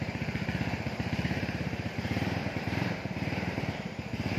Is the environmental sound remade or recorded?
remade